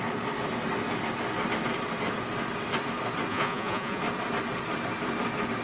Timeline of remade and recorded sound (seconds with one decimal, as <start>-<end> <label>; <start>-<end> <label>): 0.0-3.3 recorded; 3.3-4.0 remade; 4.0-5.6 recorded